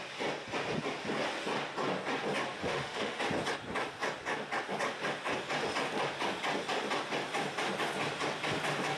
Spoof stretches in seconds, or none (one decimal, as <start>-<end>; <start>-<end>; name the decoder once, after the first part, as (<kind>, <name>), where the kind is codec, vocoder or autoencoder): 2.6-3.2 (autoencoder, DAC-VAE)